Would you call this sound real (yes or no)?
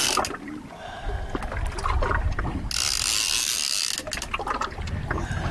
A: yes